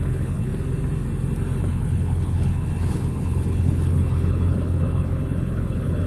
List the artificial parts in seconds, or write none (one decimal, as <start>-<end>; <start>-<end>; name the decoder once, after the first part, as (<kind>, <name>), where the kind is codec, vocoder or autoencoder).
0.0-0.5 (codec, HILCodec); 1.6-6.1